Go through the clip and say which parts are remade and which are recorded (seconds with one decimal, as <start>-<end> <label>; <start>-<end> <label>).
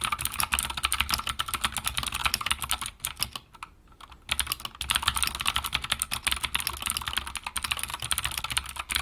0.0-2.2 recorded; 2.2-3.0 remade; 3.0-7.9 recorded; 7.9-8.4 remade; 8.4-9.0 recorded